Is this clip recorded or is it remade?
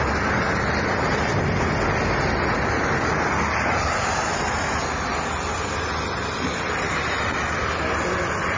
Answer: remade